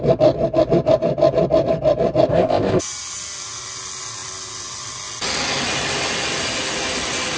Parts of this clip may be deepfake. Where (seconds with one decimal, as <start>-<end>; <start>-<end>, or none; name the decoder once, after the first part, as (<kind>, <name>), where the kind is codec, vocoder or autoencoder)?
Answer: 2.3-2.8 (codec, ZipCodec)